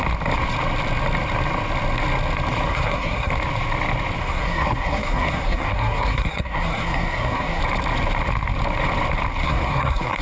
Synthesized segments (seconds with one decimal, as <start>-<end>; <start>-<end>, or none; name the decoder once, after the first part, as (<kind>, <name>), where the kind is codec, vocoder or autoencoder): 2.7-3.3 (codec, SNAC); 4.2-7.6; 9.4-10.2